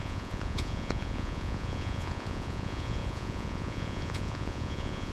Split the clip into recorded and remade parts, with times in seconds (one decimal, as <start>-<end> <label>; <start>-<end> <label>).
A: 0.0-5.1 remade